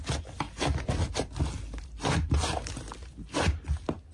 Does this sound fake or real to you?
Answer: real